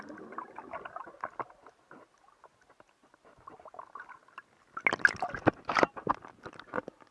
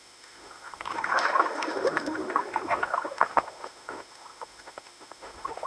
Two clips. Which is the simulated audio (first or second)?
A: second